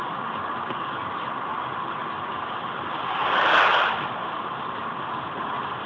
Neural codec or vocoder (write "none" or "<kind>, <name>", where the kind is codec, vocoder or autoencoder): none